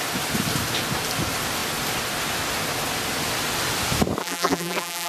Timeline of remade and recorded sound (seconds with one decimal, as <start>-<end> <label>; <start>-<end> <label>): 0.0-4.2 recorded; 4.2-5.1 remade